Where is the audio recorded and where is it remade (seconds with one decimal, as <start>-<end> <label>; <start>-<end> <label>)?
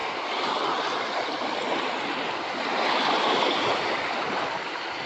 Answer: 0.0-5.1 recorded